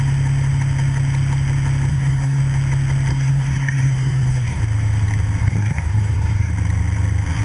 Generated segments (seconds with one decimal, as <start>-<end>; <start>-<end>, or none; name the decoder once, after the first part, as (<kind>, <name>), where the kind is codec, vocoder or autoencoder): 1.9-2.4 (codec, SNAC); 3.1-4.6; 5.4-6.5

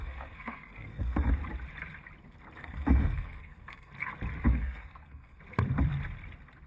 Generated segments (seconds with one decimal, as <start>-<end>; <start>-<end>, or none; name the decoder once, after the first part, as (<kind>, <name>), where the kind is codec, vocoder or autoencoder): 0.0-1.3 (codec, SNAC); 2.6-3.9; 4.5-5.4